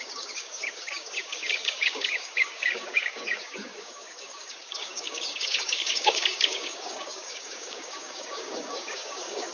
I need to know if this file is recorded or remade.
remade